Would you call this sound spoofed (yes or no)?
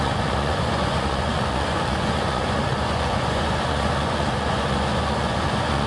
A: yes